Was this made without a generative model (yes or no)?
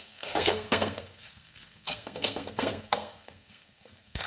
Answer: no